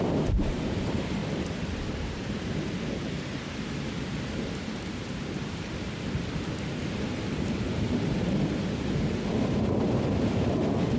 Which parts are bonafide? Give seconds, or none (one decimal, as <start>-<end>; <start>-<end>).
none

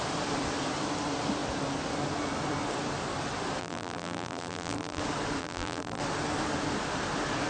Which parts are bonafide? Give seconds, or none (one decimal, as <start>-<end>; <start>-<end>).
0.0-3.6; 5.0-5.4; 6.0-7.5

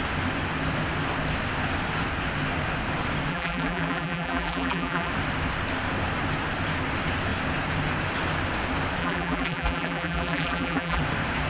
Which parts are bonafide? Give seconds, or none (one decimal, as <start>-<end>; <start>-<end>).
0.0-3.3; 5.1-9.0; 11.0-11.5

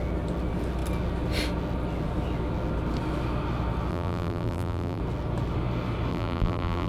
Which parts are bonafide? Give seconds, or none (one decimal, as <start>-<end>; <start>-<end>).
0.0-3.9; 5.0-6.1

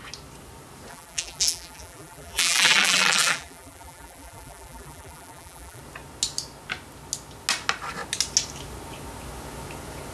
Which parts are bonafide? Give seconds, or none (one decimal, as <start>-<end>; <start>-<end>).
0.0-0.9; 5.8-10.1